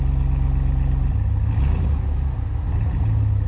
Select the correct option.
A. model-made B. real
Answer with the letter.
B